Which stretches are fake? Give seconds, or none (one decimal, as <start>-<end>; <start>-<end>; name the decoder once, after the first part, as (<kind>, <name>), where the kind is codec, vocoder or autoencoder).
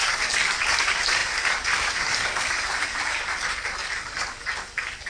0.0-5.1 (codec, DAC)